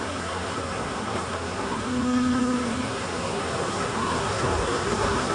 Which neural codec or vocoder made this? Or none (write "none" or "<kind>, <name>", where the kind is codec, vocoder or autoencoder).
codec, SNAC